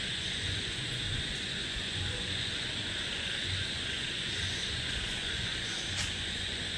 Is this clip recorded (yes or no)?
no